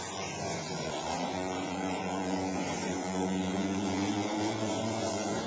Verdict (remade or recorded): remade